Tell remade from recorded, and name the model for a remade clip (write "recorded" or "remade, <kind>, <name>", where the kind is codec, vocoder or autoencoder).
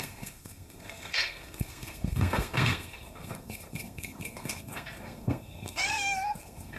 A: remade, codec, SNAC